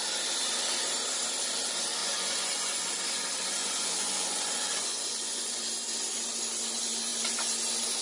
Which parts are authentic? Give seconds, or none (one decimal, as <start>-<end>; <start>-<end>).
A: 0.0-2.0; 2.9-3.6; 5.6-8.0